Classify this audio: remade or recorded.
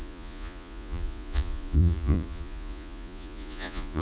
remade